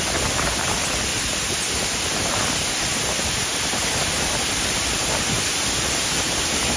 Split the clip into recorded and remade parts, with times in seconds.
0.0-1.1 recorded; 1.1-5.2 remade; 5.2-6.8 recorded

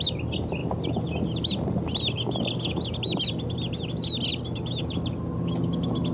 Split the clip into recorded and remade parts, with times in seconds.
0.0-6.1 recorded

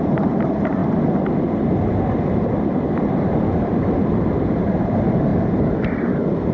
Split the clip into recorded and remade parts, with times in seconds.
0.0-0.8 remade; 0.8-4.2 recorded; 4.2-6.5 remade

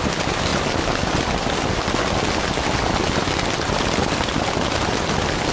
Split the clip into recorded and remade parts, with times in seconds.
0.0-5.5 recorded

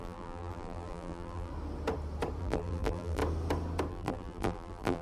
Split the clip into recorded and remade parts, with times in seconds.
0.0-1.5 remade; 1.5-2.4 recorded; 2.4-3.2 remade; 3.2-3.9 recorded; 3.9-5.0 remade

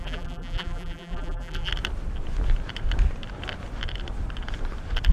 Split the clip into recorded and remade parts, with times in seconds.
0.0-1.7 remade; 1.7-5.1 recorded

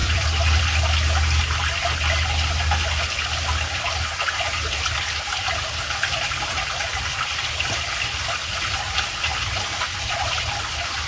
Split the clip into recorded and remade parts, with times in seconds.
0.0-0.6 remade; 0.6-11.1 recorded

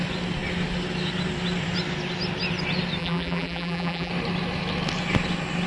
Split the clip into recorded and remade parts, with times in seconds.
0.0-3.0 recorded; 3.0-4.1 remade; 4.1-5.7 recorded